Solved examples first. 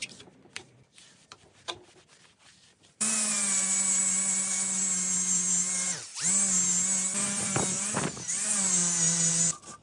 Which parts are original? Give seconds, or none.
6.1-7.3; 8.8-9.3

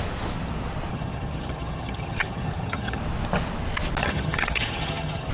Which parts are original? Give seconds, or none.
0.0-0.9; 3.0-4.0

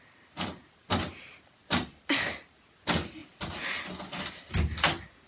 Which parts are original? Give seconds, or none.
0.0-5.3

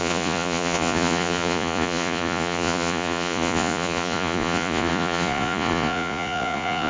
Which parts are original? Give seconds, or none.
none

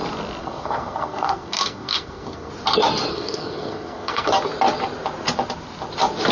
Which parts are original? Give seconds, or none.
0.0-0.4; 2.5-3.1; 4.3-6.3